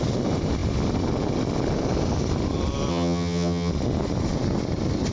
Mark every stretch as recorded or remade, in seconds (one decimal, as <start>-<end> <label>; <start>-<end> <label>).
0.0-2.9 recorded; 2.9-3.7 remade; 3.7-5.1 recorded